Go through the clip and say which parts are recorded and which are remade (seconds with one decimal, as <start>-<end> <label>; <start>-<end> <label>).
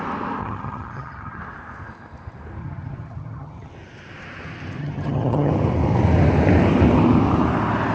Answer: 0.0-0.4 recorded; 0.4-1.4 remade; 1.4-2.6 recorded; 2.6-3.7 remade; 3.7-4.8 recorded; 4.8-5.5 remade; 5.5-7.9 recorded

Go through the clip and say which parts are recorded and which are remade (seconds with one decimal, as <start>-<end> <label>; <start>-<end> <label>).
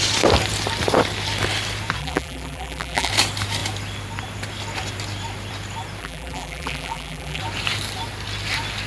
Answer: 0.0-2.0 recorded; 2.0-3.1 remade; 3.1-6.0 recorded; 6.0-7.4 remade; 7.4-8.9 recorded